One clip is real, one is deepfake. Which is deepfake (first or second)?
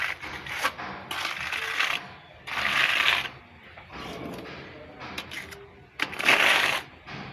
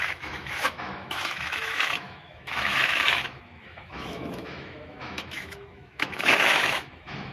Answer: second